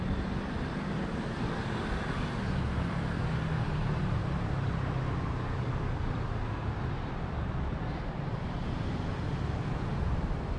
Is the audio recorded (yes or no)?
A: yes